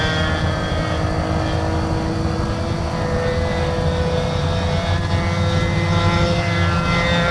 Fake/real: real